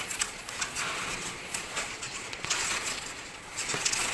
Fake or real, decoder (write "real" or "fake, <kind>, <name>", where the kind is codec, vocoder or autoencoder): fake, vocoder, Vocos